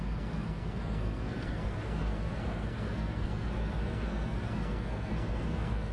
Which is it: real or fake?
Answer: fake